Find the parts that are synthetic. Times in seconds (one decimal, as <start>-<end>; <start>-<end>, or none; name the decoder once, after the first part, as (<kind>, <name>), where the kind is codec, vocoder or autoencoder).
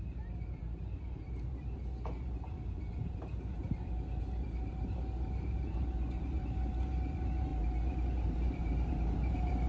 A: 0.0-9.7 (vocoder, BigVGAN v2)